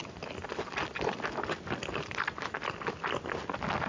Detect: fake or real real